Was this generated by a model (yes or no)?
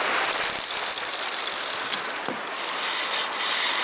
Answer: no